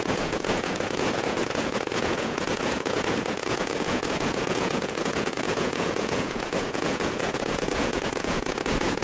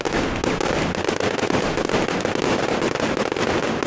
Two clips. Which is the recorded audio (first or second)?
second